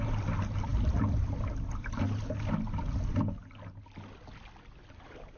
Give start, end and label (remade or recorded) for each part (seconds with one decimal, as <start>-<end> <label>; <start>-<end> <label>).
0.0-5.4 recorded